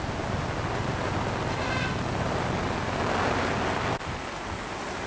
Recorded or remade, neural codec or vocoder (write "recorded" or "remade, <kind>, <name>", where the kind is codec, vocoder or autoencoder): recorded